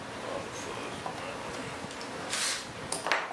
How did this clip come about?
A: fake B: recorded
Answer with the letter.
B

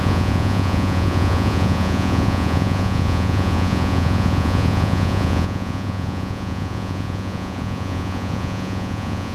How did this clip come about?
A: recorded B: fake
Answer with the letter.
B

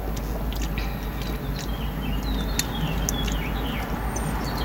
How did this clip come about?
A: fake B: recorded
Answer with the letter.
B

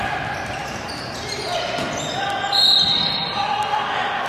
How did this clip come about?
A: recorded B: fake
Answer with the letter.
B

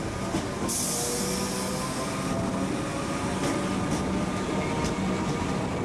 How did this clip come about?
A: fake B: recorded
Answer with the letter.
B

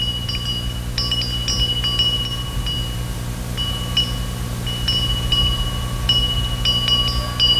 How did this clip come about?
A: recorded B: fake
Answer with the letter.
A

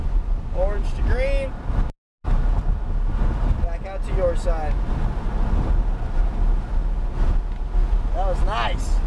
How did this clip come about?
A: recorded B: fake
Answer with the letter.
A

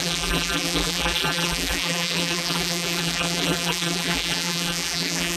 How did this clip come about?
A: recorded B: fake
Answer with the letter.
B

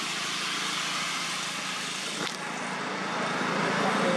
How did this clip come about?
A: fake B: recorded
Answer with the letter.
B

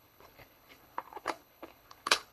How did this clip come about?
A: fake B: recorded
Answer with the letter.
A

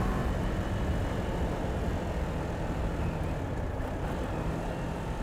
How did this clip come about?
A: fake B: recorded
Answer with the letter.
B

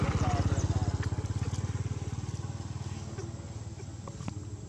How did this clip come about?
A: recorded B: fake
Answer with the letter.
A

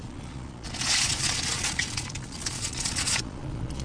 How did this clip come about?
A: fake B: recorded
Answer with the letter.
A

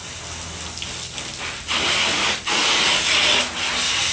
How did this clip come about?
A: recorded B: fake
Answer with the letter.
A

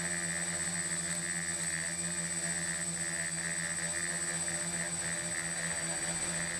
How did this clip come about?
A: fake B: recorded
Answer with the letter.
B